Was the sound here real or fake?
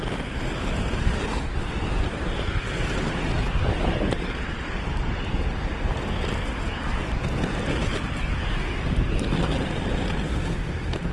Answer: real